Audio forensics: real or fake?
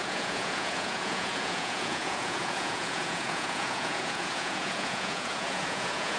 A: fake